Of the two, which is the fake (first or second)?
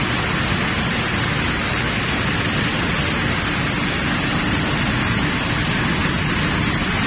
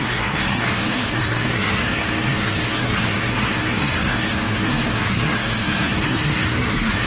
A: second